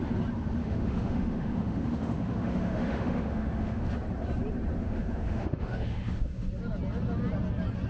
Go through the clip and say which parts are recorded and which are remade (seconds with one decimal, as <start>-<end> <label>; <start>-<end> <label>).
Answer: 0.0-0.6 recorded; 0.6-3.9 remade; 3.9-4.8 recorded; 4.8-6.5 remade; 6.5-7.9 recorded